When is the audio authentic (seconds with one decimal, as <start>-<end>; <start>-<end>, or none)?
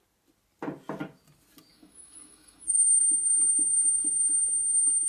0.0-1.7; 3.0-5.1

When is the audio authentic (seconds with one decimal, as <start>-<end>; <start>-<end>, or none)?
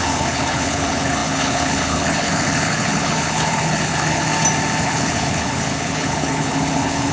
4.3-4.8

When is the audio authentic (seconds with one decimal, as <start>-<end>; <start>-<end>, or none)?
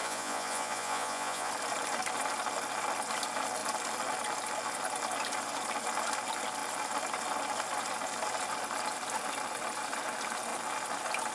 1.5-11.3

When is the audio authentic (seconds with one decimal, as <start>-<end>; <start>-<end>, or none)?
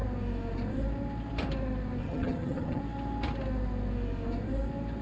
0.0-2.0; 2.8-5.0